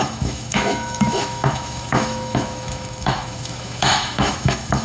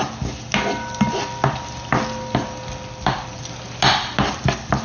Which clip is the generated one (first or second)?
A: first